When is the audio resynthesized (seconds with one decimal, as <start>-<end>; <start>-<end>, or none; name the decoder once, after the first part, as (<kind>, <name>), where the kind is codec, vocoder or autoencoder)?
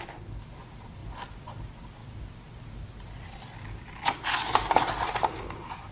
1.0-1.6 (vocoder, BigVGAN v2); 2.0-2.6